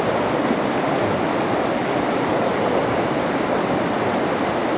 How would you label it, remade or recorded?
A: recorded